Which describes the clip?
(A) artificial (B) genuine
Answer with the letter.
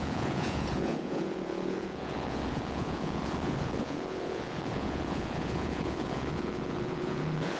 A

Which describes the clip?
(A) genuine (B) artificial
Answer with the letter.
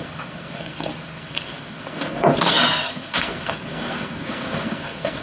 B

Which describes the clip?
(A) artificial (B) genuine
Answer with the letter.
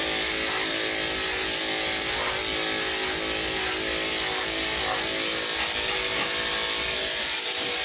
B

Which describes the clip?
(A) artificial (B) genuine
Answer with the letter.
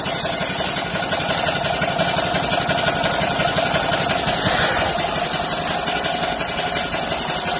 B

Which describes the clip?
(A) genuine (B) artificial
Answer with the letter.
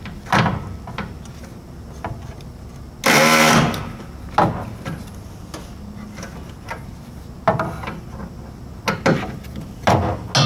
A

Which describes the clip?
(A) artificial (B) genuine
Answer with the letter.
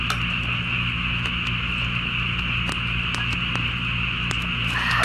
B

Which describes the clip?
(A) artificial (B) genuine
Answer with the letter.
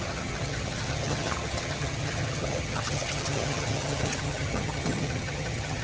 A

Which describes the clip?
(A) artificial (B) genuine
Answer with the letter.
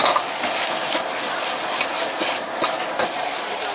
B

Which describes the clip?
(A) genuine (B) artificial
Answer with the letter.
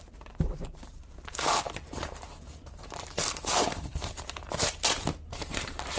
B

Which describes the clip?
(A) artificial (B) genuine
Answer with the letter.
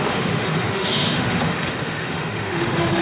A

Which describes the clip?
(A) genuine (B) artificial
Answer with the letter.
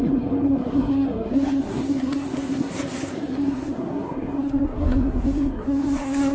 B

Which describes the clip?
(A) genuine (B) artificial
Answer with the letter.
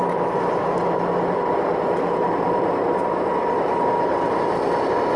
A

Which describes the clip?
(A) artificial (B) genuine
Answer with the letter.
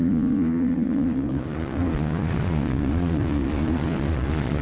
A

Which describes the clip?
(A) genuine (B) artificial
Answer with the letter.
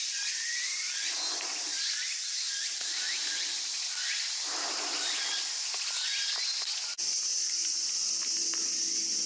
A